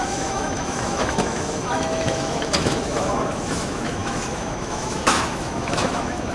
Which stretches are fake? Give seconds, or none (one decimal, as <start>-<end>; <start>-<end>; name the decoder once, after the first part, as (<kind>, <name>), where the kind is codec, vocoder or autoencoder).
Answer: 0.0-6.3 (autoencoder, DAC-VAE)